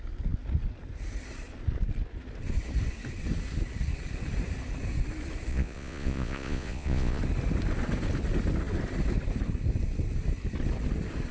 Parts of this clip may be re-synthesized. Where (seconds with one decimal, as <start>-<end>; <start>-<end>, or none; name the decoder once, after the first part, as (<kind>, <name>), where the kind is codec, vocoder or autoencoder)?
5.5-7.2 (vocoder, Vocos)